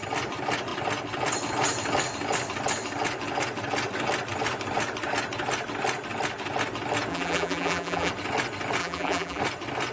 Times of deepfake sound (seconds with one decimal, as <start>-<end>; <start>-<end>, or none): 7.1-8.1; 8.8-9.4